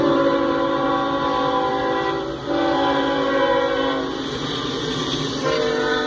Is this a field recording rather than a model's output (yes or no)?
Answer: yes